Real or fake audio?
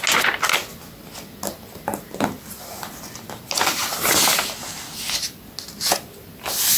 real